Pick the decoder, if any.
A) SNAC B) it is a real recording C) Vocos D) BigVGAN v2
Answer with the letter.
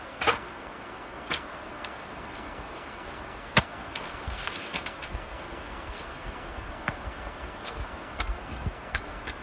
A